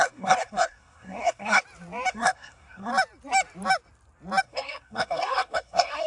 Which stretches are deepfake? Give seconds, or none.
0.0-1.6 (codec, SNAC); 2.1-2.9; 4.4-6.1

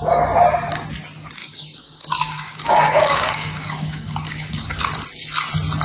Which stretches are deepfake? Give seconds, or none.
1.4-4.9 (codec, DAC)

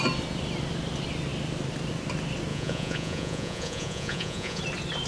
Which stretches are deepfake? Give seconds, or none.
2.5-4.6 (vocoder, Vocos)

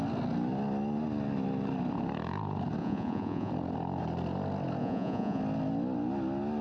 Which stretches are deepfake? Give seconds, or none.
2.8-3.5 (vocoder, Vocos); 4.8-5.4

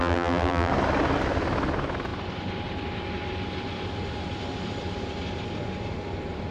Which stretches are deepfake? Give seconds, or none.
0.0-0.7 (vocoder, BigVGAN v2)

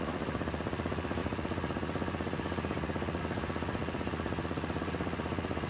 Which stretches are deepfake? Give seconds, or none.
0.0-5.7 (vocoder, Vocos)